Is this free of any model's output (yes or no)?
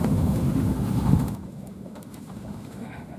no